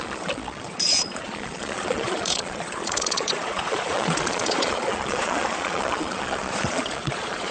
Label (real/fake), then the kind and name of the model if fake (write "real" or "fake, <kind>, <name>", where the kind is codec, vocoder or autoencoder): fake, vocoder, Vocos